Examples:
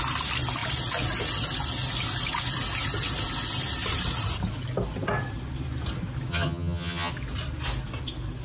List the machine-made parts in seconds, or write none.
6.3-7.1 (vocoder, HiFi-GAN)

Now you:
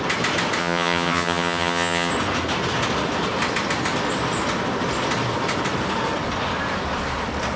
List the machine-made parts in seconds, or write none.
0.6-2.1 (vocoder, HiFi-GAN)

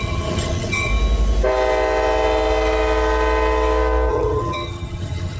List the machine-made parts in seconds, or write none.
0.0-0.9 (vocoder, HiFi-GAN); 4.1-5.4

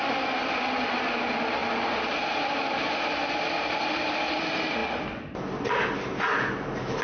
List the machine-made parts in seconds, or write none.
none

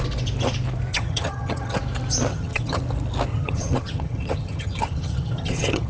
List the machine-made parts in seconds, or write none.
0.9-1.8 (vocoder, HiFi-GAN); 2.3-2.8; 3.3-5.9

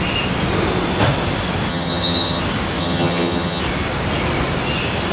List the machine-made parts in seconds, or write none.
1.7-2.4 (vocoder, HiFi-GAN); 2.8-3.6

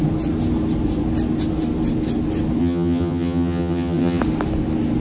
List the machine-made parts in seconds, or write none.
2.6-4.2 (vocoder, HiFi-GAN)